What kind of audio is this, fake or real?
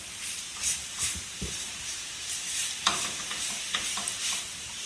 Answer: real